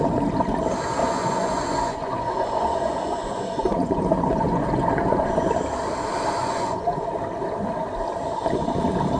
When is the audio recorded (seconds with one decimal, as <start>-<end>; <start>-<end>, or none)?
0.0-1.0; 5.5-6.4; 7.0-9.2